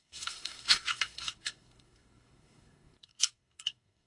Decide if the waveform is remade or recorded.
remade